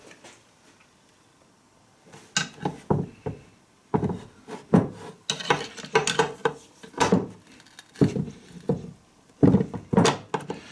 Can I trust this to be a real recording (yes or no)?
yes